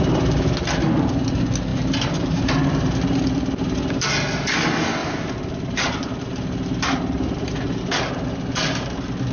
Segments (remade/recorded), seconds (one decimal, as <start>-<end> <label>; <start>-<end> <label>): 0.0-1.7 recorded; 1.7-3.8 remade; 3.8-5.0 recorded; 5.0-7.8 remade; 7.8-9.3 recorded